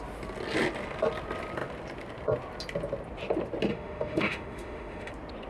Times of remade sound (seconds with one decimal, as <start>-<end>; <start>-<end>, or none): 3.7-5.1